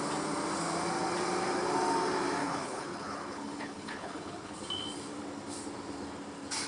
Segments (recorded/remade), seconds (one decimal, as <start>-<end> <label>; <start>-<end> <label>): 0.0-2.4 recorded; 2.4-4.6 remade; 4.6-6.7 recorded